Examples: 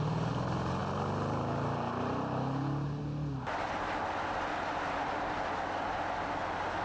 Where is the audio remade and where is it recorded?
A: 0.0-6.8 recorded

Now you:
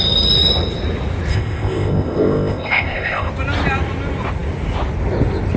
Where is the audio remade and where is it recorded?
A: 0.0-1.3 recorded; 1.3-3.3 remade; 3.3-5.6 recorded

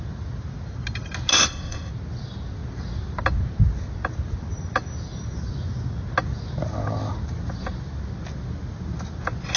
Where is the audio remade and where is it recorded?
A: 0.0-1.3 recorded; 1.3-1.9 remade; 1.9-9.6 recorded

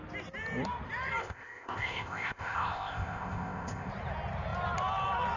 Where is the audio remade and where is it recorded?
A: 0.0-1.2 recorded; 1.2-3.9 remade; 3.9-5.4 recorded

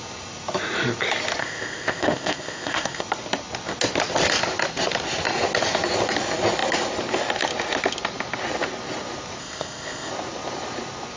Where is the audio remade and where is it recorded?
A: 0.0-1.4 recorded; 1.4-3.0 remade; 3.0-9.4 recorded; 9.4-10.1 remade; 10.1-11.2 recorded

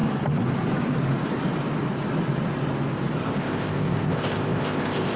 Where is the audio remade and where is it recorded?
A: 0.0-3.2 recorded; 3.2-5.2 remade